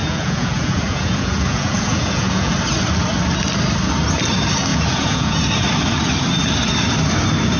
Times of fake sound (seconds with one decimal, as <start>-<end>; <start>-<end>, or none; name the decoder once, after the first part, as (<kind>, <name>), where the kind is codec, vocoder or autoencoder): 0.0-2.5 (vocoder, Vocos); 4.7-5.4